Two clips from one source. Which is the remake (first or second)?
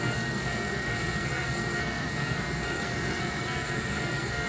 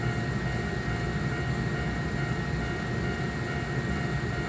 first